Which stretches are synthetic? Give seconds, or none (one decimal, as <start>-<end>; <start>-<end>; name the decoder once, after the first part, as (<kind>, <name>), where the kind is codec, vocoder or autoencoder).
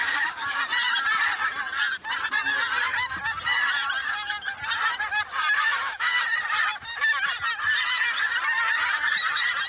0.0-0.6 (codec, DAC); 5.6-6.2